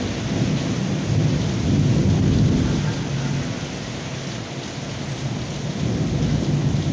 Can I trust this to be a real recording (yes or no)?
yes